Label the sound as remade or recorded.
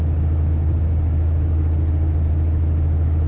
recorded